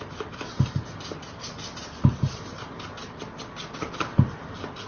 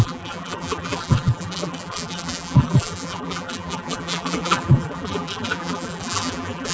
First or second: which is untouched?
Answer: first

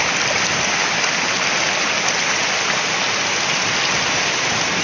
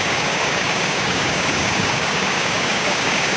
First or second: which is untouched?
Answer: first